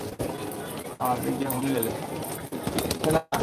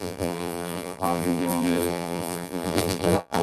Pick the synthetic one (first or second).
second